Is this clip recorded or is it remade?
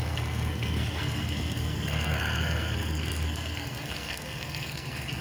remade